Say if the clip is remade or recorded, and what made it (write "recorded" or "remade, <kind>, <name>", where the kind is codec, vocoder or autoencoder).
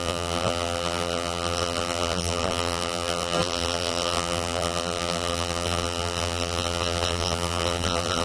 remade, vocoder, BigVGAN v2